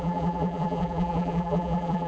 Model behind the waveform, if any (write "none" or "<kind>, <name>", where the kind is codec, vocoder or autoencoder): vocoder, BigVGAN v2